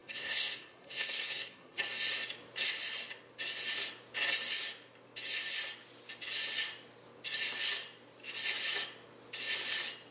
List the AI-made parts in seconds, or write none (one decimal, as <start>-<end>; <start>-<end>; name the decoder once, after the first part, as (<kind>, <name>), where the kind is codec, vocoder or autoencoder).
0.0-1.8 (codec, SNAC)